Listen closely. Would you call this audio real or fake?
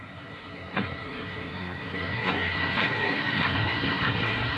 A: fake